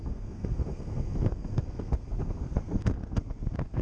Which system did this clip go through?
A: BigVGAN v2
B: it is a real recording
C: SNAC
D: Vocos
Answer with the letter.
C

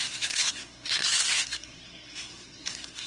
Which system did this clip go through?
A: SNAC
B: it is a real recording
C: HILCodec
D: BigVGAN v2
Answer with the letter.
A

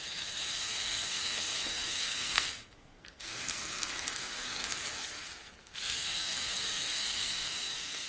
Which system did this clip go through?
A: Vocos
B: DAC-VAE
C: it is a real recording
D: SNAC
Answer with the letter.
D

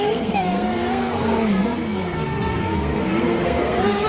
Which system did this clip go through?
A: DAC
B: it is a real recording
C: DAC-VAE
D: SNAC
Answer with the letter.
D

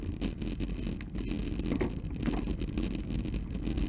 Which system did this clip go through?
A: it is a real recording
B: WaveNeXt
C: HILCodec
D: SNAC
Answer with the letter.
A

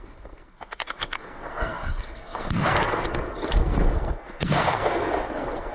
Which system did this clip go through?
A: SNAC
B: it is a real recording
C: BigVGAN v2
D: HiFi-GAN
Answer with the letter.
A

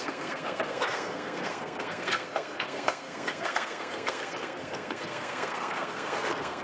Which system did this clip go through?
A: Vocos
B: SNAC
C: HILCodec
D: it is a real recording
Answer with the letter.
B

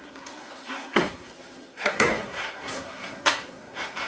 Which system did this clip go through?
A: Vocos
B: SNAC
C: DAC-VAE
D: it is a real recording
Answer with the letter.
B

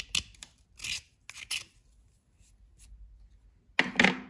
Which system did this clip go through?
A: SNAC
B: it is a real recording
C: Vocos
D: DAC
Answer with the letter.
B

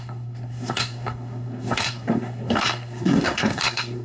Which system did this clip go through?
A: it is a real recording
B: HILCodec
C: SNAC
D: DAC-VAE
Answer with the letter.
C